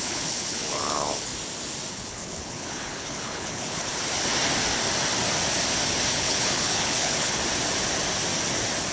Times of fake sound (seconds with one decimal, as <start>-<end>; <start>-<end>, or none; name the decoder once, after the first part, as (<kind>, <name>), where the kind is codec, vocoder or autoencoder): 0.0-1.3 (codec, HILCodec); 1.9-3.9; 6.1-7.4